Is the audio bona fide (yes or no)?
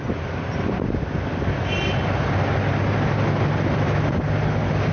yes